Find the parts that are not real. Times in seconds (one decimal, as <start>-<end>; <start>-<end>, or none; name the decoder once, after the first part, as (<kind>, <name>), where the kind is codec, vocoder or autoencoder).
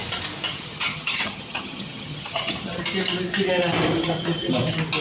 0.5-2.8 (vocoder, HiFi-GAN)